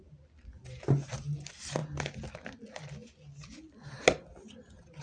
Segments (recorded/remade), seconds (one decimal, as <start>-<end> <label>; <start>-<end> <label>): 0.0-5.0 recorded